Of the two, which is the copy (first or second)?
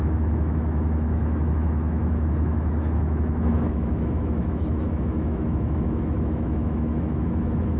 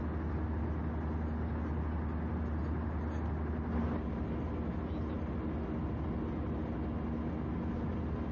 first